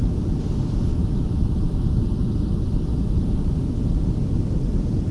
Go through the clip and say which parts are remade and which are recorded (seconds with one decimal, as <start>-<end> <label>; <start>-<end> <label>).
0.0-0.9 recorded; 0.9-1.9 remade; 1.9-5.1 recorded